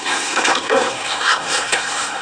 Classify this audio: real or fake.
fake